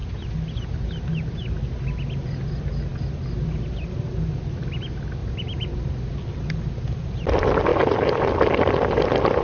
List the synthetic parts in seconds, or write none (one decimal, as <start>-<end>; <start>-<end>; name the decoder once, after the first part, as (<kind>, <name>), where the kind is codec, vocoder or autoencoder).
5.2-5.9 (vocoder, BigVGAN v2)